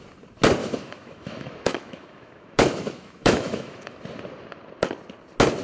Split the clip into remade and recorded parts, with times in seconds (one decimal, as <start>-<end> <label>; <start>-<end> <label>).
0.0-0.6 recorded; 0.6-4.0 remade; 4.0-5.6 recorded